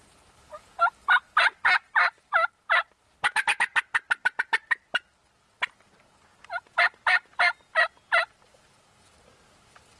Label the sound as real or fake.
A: real